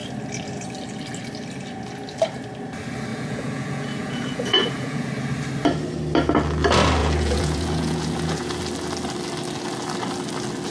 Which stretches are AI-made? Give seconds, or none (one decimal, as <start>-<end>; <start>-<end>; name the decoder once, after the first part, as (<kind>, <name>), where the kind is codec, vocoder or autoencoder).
3.1-5.1 (vocoder, Vocos); 7.0-8.6